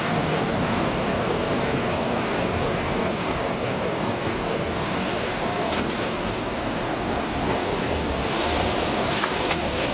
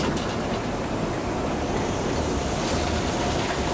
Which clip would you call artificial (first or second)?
first